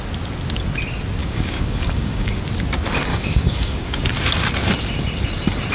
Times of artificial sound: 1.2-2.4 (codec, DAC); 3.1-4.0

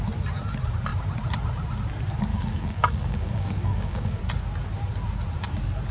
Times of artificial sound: 2.3-4.2 (codec, DAC)

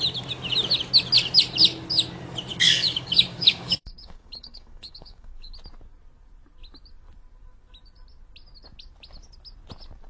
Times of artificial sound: 2.5-5.5 (codec, DAC)

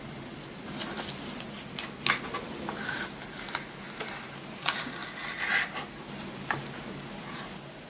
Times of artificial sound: none

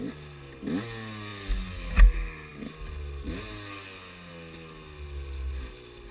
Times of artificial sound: none

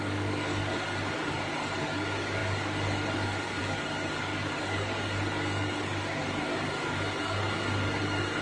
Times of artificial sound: 0.0-8.4 (codec, DAC)

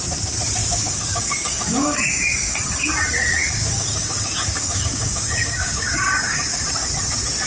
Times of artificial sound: 0.6-2.5 (codec, DAC); 3.4-6.6